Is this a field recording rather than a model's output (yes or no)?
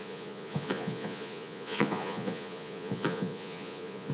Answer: no